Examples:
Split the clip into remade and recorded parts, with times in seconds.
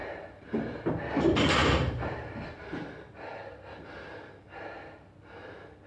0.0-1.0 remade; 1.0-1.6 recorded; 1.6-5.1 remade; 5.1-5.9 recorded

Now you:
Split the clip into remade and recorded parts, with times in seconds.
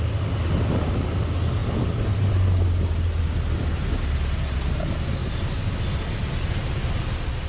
0.0-7.5 recorded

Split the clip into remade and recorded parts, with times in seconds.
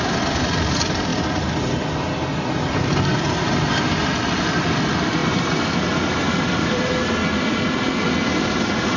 0.0-5.2 recorded; 5.2-7.1 remade; 7.1-9.0 recorded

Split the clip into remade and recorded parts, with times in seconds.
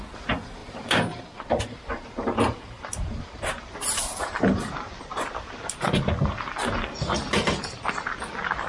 0.0-0.6 recorded; 0.6-5.7 remade; 5.7-8.7 recorded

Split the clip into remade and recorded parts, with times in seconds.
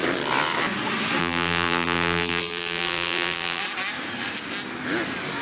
0.0-1.2 recorded; 1.2-3.6 remade; 3.6-5.4 recorded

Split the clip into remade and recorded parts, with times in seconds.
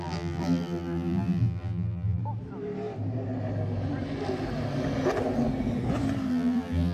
0.0-2.2 remade; 2.2-6.3 recorded; 6.3-6.9 remade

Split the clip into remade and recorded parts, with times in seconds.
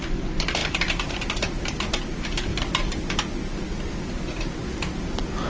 0.0-0.6 recorded; 0.6-1.1 remade; 1.1-2.5 recorded; 2.5-3.1 remade; 3.1-5.5 recorded